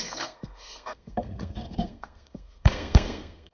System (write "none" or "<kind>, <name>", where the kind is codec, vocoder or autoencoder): codec, SNAC